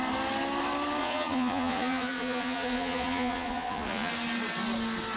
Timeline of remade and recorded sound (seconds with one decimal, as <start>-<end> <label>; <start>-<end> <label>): 0.0-1.0 recorded; 1.0-4.1 remade; 4.1-5.2 recorded